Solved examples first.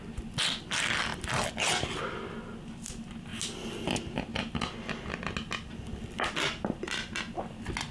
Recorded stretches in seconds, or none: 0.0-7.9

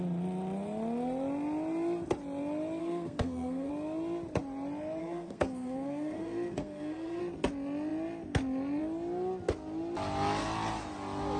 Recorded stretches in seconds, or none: 0.0-2.8; 3.7-5.0; 7.2-11.4

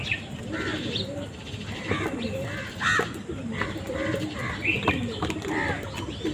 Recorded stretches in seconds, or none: 0.0-6.3

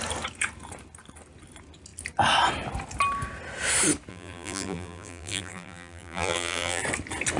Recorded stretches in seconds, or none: 0.0-4.1; 6.8-7.4